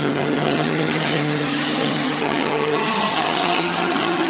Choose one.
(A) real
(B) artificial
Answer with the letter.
B